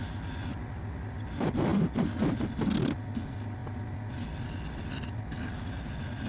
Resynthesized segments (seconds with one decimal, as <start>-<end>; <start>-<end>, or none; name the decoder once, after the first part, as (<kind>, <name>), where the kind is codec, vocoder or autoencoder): none